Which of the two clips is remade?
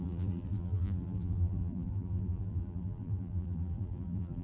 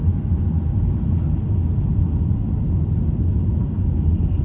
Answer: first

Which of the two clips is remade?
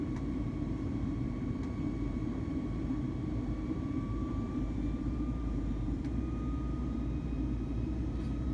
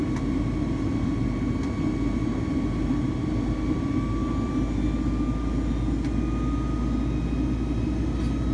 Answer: first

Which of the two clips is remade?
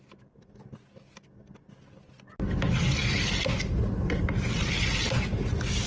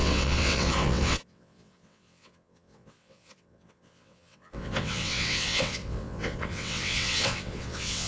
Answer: second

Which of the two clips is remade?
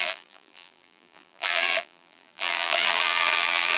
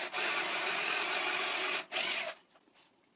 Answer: first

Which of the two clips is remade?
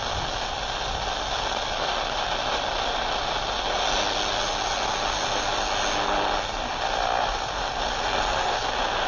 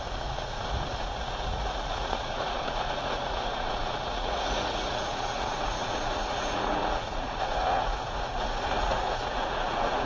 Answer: second